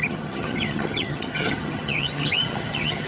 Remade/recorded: remade